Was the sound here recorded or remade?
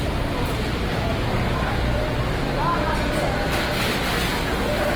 recorded